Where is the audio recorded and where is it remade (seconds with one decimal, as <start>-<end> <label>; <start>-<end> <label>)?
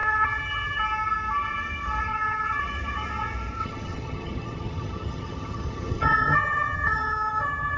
0.0-0.8 remade; 0.8-2.1 recorded; 2.1-2.6 remade; 2.6-3.6 recorded; 3.6-7.8 remade